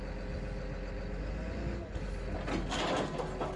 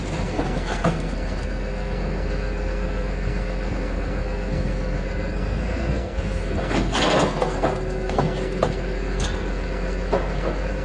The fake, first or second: second